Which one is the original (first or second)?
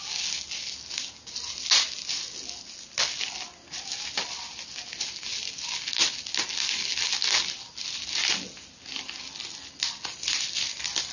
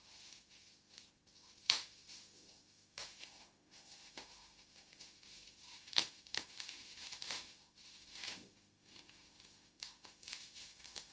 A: first